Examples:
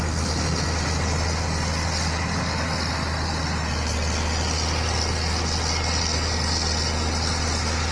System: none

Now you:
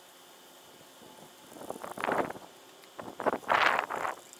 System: none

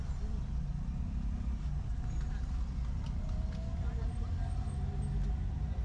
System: none